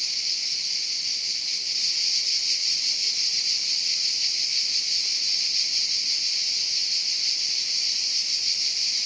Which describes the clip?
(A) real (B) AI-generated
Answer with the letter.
A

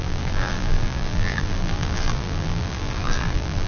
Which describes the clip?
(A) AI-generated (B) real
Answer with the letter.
A